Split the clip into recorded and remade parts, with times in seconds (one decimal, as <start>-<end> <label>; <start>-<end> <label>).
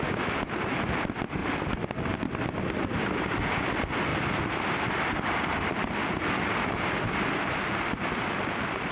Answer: 0.0-8.9 recorded